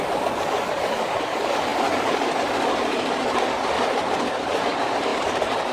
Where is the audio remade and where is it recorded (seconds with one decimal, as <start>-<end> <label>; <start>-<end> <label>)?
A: 0.0-5.7 remade